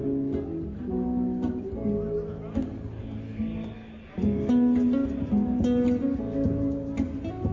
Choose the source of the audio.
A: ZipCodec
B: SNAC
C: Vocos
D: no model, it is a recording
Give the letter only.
D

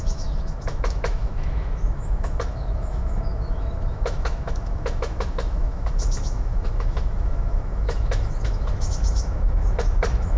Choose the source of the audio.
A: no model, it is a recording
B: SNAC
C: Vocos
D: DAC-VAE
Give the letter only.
D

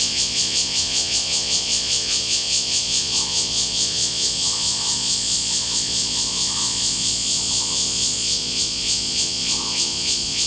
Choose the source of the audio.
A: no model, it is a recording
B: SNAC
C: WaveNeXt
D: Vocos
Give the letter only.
D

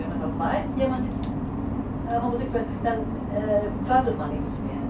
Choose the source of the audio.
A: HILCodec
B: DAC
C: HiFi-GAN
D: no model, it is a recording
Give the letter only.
D